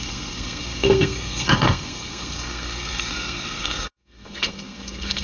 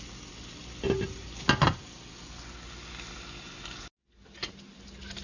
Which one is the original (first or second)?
second